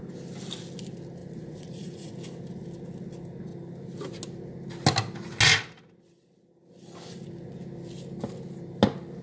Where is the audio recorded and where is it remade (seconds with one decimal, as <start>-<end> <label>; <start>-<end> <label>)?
0.0-1.2 recorded; 1.2-2.1 remade; 2.1-9.2 recorded